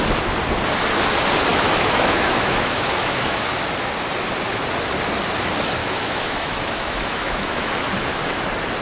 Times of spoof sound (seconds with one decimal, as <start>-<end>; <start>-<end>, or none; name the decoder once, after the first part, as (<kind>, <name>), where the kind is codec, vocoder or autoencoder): 1.5-3.5 (autoencoder, DAC-VAE); 5.8-7.7

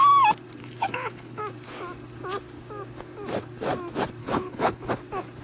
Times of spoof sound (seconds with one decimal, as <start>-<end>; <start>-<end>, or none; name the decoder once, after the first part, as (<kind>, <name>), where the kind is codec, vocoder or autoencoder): 0.6-1.4 (codec, HILCodec); 4.2-4.9